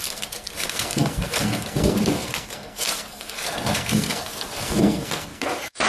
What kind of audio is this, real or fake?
fake